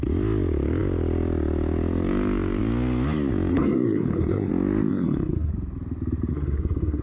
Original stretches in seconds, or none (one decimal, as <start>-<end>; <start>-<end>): 0.0-3.5; 4.5-4.9; 5.5-6.3